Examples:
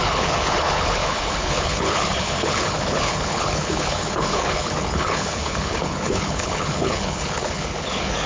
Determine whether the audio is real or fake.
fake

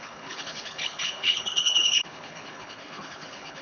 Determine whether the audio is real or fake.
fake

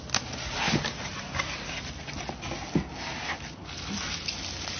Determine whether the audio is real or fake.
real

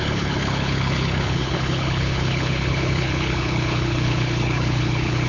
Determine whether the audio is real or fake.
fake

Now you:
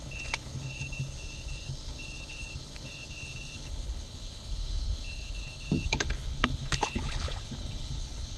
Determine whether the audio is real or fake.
fake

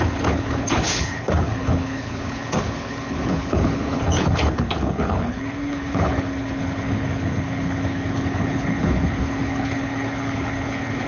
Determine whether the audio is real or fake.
fake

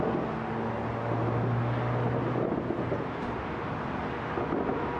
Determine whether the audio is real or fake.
real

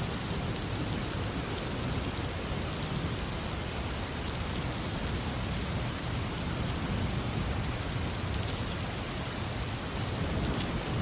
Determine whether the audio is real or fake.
real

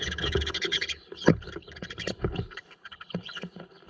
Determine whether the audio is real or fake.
fake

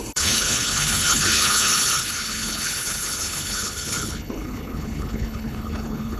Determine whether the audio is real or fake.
fake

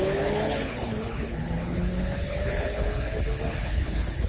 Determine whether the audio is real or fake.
fake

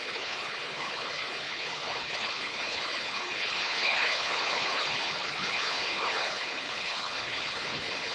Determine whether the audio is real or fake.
fake